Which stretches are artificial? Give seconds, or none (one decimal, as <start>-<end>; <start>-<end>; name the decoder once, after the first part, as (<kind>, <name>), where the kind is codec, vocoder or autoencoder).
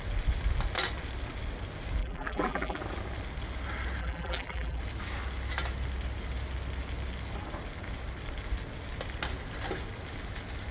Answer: 2.0-2.8 (vocoder, BigVGAN v2); 4.0-4.8